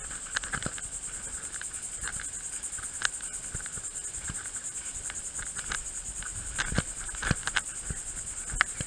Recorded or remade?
recorded